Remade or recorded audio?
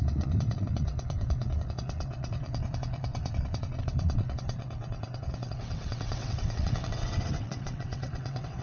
remade